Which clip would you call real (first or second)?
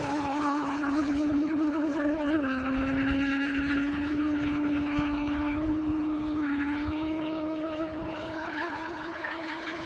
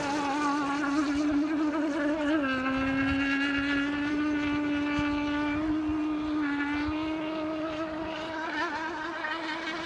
second